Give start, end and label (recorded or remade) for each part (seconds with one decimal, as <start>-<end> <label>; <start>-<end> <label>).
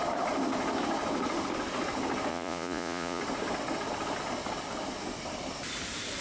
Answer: 0.0-2.3 recorded; 2.3-3.2 remade; 3.2-6.2 recorded